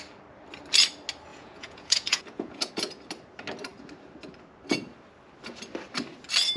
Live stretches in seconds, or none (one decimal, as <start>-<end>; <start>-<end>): 0.0-1.3; 2.7-6.6